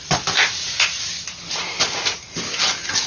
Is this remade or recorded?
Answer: recorded